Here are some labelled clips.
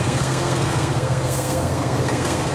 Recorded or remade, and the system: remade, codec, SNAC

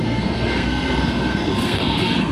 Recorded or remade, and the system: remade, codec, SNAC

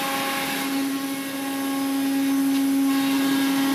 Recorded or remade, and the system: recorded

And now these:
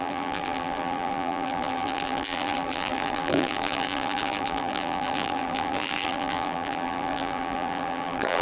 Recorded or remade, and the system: remade, vocoder, BigVGAN v2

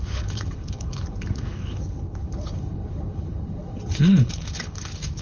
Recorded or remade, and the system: remade, codec, HILCodec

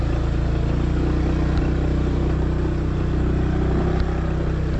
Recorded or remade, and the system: recorded